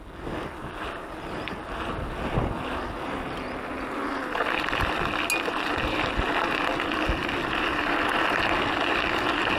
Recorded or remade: recorded